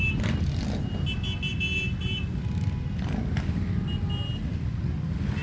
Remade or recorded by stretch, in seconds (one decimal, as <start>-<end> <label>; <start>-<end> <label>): 0.0-5.4 recorded